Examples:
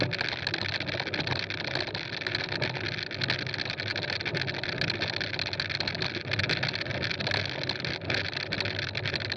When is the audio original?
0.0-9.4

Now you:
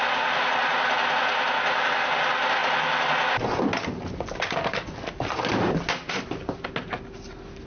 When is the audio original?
0.0-7.7

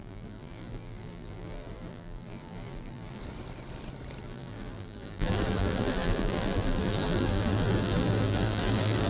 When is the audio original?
3.2-4.2

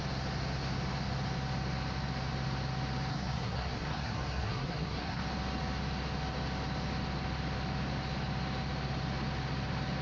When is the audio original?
0.0-3.1; 5.2-10.0

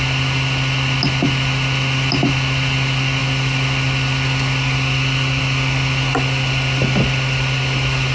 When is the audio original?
0.0-8.1

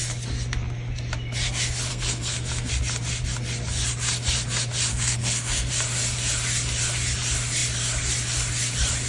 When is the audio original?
0.0-1.9; 2.7-4.9; 5.7-9.1

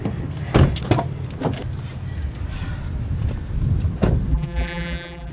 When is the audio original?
0.0-4.3